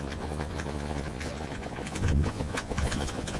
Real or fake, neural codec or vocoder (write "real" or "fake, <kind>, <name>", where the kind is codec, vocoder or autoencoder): fake, vocoder, Vocos